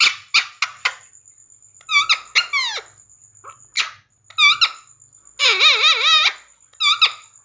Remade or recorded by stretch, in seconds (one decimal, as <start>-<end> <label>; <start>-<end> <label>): 0.0-7.4 recorded